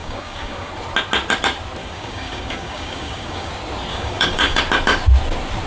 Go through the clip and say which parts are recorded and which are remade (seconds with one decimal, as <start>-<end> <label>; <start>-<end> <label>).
0.0-0.7 remade; 0.7-1.8 recorded; 1.8-3.5 remade; 3.5-3.9 recorded; 3.9-4.6 remade; 4.6-5.7 recorded